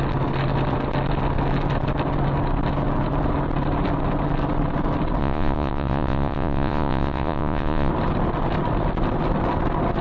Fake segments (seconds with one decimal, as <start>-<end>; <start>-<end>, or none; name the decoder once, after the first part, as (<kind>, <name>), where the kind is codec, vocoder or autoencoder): 5.2-7.9 (vocoder, Vocos)